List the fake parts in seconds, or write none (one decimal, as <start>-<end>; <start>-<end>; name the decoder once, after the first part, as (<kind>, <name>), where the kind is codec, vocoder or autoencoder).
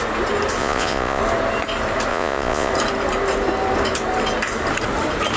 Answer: 0.6-1.2 (vocoder, Vocos); 2.1-2.7